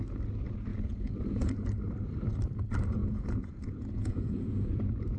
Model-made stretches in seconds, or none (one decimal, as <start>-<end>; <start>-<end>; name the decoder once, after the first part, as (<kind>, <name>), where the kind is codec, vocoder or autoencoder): 0.7-1.5 (vocoder, Vocos); 3.0-4.8